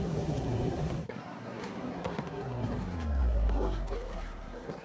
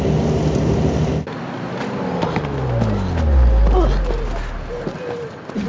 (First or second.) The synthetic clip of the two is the first